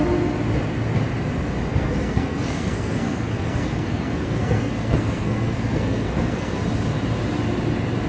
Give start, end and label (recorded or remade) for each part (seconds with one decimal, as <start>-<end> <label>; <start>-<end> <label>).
0.0-1.7 recorded; 1.7-6.6 remade; 6.6-8.1 recorded